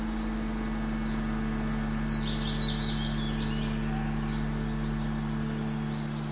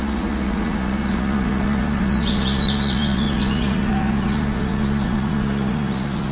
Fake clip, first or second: second